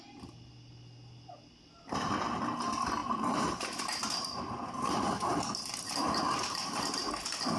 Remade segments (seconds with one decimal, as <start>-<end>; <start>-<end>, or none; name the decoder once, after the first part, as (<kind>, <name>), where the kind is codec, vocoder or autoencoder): 3.0-6.8 (vocoder, BigVGAN v2)